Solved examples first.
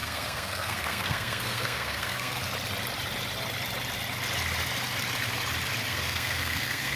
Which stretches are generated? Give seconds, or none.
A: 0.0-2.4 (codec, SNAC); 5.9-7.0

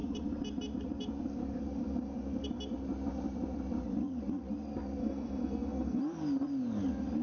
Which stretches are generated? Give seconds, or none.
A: 5.0-6.0 (codec, SNAC)

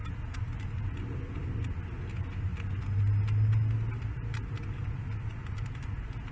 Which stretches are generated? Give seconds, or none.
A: none